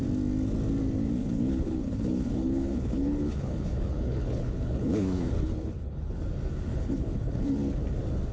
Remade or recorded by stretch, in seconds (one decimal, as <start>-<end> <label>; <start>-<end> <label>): 0.0-1.2 recorded; 1.2-6.1 remade; 6.1-6.7 recorded; 6.7-7.5 remade; 7.5-8.3 recorded